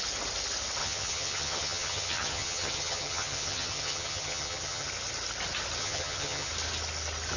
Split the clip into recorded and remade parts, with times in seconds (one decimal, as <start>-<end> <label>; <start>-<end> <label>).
0.0-0.8 recorded; 0.8-4.9 remade; 4.9-5.8 recorded; 5.8-6.5 remade; 6.5-7.4 recorded